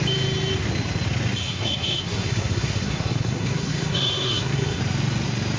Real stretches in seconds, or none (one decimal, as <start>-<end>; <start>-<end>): 0.0-1.4; 4.8-5.6